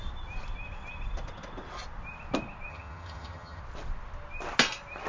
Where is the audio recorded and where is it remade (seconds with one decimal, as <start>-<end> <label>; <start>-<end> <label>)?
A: 0.0-2.7 recorded; 2.7-3.6 remade; 3.6-5.1 recorded